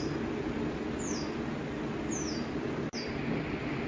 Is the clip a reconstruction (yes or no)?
no